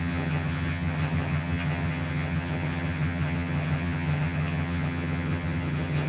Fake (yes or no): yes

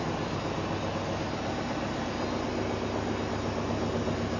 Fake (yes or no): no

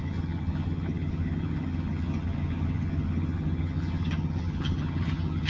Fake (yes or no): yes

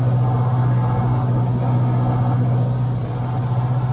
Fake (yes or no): no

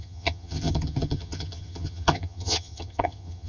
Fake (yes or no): yes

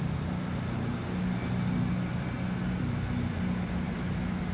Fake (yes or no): no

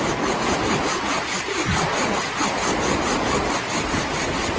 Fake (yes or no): no